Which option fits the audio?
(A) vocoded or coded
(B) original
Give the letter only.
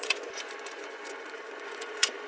A